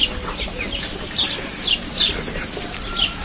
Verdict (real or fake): real